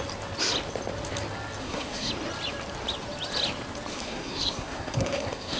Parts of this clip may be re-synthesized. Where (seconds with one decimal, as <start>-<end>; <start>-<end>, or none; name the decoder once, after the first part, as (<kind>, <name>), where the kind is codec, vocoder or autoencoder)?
1.6-2.1 (codec, SNAC); 3.9-5.6